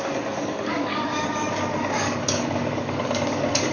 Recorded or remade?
remade